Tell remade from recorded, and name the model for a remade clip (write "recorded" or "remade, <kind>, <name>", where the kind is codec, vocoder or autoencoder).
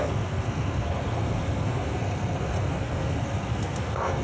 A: remade, codec, SNAC